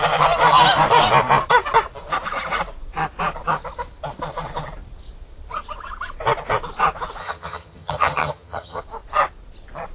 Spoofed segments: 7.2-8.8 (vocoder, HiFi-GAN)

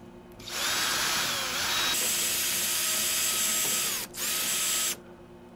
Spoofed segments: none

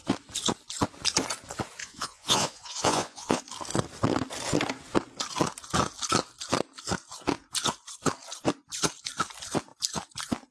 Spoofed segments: 1.8-3.4 (vocoder, Vocos)

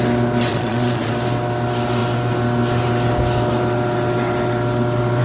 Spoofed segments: 0.5-1.1 (vocoder, Vocos)